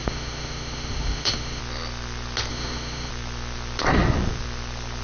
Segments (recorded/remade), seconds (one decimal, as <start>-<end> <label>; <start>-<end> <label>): 0.0-1.6 remade; 1.6-2.5 recorded; 2.5-3.1 remade; 3.1-5.0 recorded

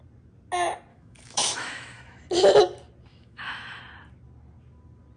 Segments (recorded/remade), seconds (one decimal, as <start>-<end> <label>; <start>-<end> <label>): 0.0-0.9 recorded; 0.9-2.3 remade; 2.3-3.1 recorded; 3.1-3.8 remade; 3.8-5.2 recorded

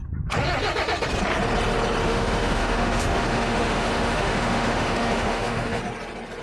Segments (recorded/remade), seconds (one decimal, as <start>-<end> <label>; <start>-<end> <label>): 0.0-2.0 recorded; 2.0-5.8 remade; 5.8-6.4 recorded

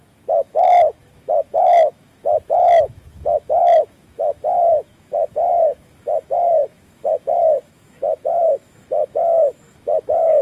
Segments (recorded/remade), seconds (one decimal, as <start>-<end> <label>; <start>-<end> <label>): 0.0-10.4 remade

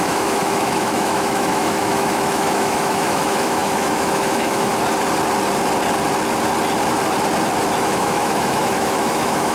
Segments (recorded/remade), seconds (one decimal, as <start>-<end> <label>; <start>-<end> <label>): 0.0-4.7 remade; 4.7-7.8 recorded; 7.8-9.5 remade

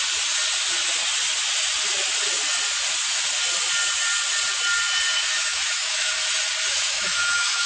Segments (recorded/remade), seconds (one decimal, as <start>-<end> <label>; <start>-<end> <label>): 0.0-5.4 recorded; 5.4-6.1 remade; 6.1-6.7 recorded; 6.7-7.7 remade